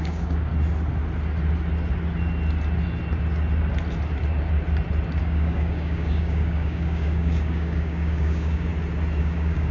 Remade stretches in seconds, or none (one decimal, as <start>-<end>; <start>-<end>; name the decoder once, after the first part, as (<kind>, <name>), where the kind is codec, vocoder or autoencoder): 0.0-0.5 (codec, DAC); 5.2-8.7; 9.2-9.7